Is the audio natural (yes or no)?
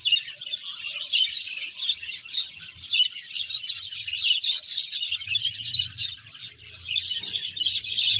yes